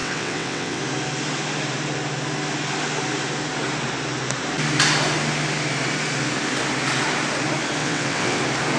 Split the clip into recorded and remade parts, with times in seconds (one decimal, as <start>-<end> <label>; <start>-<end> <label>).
0.0-0.8 remade; 0.8-7.8 recorded; 7.8-8.4 remade; 8.4-8.8 recorded